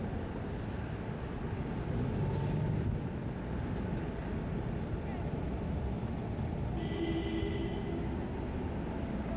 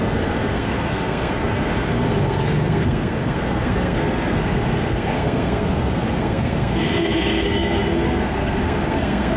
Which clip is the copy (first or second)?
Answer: second